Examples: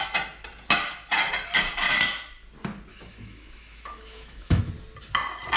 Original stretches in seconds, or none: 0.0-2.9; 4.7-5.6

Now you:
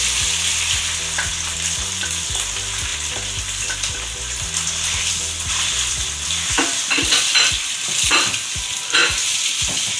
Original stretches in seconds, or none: 0.0-2.9; 7.5-9.0

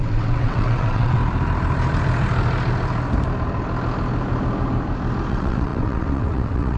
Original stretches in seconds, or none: 1.2-5.3

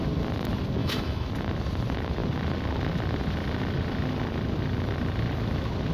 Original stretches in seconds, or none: 0.0-0.8; 1.3-5.9

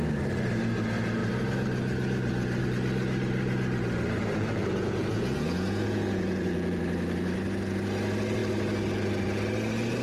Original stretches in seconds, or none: 0.0-4.6; 6.8-10.0

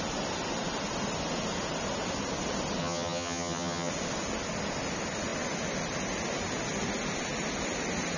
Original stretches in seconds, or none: 0.0-2.8; 3.9-8.2

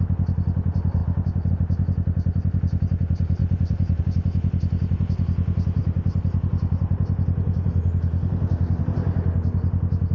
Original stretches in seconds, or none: 0.0-3.4; 4.0-10.1